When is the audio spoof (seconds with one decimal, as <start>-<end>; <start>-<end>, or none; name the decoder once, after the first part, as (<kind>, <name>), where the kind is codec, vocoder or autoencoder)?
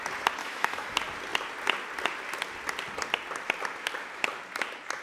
0.4-0.9 (autoencoder, DAC-VAE)